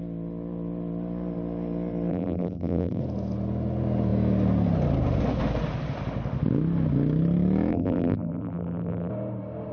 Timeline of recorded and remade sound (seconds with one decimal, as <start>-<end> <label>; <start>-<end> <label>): 0.0-2.1 recorded; 2.1-3.0 remade; 3.0-7.7 recorded; 7.7-9.1 remade; 9.1-9.7 recorded